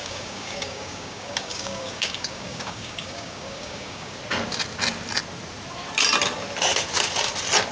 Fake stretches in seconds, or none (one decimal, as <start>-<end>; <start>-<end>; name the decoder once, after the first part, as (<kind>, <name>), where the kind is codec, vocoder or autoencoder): 0.0-4.2 (codec, DAC)

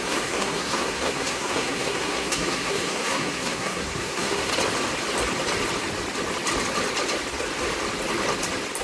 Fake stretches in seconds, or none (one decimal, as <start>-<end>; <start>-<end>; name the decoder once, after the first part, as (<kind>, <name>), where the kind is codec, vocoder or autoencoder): 0.0-4.5 (codec, SNAC)

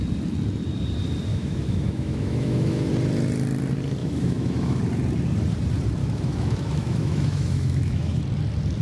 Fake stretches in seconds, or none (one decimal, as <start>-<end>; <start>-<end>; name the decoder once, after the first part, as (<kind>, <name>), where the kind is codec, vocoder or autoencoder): 1.3-2.9 (autoencoder, DAC-VAE); 4.0-4.8; 6.0-8.2

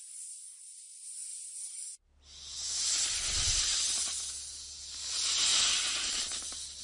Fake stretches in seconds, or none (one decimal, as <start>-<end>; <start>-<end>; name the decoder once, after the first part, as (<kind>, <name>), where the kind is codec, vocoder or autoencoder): 1.3-4.3 (vocoder, BigVGAN v2); 5.5-6.8

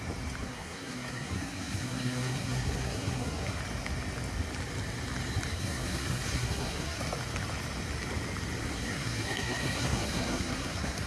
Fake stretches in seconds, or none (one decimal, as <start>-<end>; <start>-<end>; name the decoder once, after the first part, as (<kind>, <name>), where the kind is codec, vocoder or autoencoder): 0.4-3.6 (codec, SNAC); 5.5-7.0; 8.6-11.1